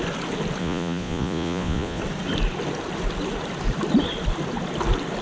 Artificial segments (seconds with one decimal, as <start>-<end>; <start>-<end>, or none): 0.6-2.0